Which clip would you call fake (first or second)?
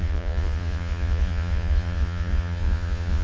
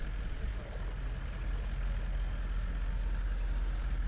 first